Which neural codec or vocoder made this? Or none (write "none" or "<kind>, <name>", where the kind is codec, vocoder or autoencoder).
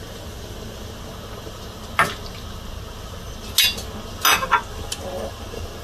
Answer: none